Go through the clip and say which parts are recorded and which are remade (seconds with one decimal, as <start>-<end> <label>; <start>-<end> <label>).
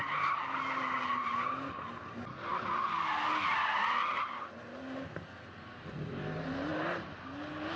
0.0-7.8 recorded